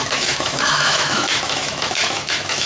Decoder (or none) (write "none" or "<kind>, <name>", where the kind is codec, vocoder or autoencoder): autoencoder, DAC-VAE